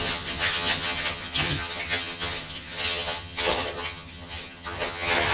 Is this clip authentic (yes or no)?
no